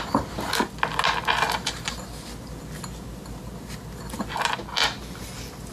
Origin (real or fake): real